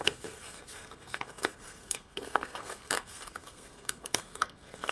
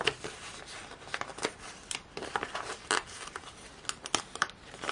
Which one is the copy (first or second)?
first